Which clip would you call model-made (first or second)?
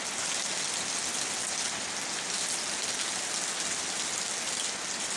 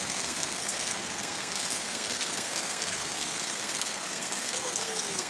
second